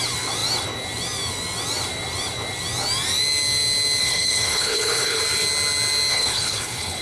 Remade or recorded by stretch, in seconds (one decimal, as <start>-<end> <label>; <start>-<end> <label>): 0.0-4.0 recorded; 4.0-5.2 remade; 5.2-6.1 recorded; 6.1-7.0 remade

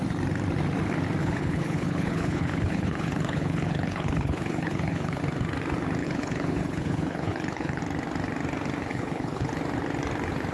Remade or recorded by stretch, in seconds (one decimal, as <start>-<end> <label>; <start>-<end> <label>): 0.0-1.2 recorded; 1.2-5.2 remade; 5.2-6.0 recorded; 6.0-7.8 remade; 7.8-8.9 recorded; 8.9-9.5 remade; 9.5-10.5 recorded

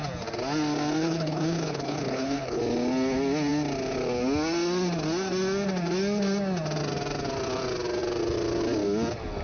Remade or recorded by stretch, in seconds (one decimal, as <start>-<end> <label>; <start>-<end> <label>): 0.0-1.0 recorded; 1.0-2.6 remade; 2.6-9.4 recorded

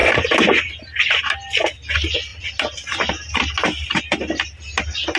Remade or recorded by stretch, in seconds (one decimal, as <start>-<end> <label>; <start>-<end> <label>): 0.0-5.2 recorded

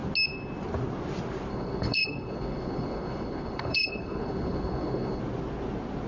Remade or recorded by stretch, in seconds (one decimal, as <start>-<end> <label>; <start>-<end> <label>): 0.0-1.5 recorded; 1.5-5.2 remade; 5.2-6.1 recorded

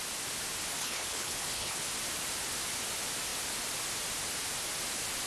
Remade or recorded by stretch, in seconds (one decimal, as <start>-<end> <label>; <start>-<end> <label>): 0.0-0.8 recorded; 0.8-1.8 remade; 1.8-5.3 recorded

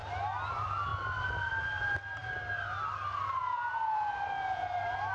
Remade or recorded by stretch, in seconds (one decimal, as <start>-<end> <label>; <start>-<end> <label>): 0.0-5.1 recorded